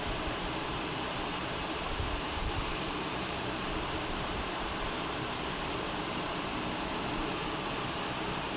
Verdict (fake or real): fake